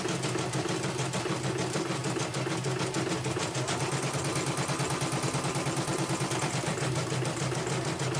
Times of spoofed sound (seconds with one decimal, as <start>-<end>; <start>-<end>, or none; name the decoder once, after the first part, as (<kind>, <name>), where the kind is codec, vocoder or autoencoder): none